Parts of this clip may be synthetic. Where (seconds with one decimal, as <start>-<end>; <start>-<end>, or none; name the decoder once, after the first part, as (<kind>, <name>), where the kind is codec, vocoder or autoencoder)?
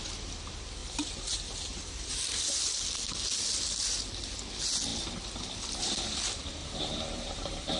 0.8-2.4 (vocoder, BigVGAN v2); 6.6-7.8